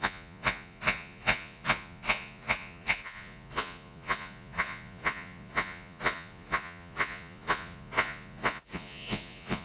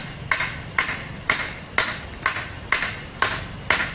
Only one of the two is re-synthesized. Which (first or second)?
first